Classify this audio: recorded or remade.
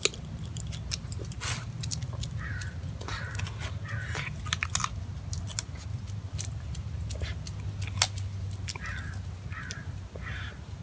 recorded